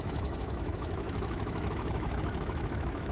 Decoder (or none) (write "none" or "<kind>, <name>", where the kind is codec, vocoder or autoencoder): autoencoder, DAC-VAE